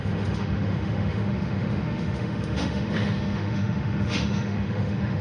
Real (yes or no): no